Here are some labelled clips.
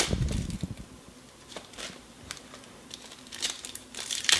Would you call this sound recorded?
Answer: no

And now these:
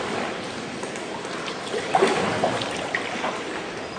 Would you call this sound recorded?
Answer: yes